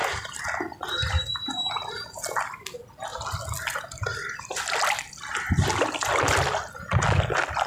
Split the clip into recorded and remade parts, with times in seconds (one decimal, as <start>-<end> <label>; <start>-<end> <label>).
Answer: 0.0-7.7 recorded